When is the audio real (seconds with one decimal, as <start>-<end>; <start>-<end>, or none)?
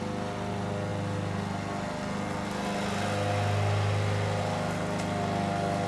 0.0-5.9